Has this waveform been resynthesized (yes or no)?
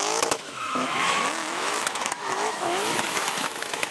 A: yes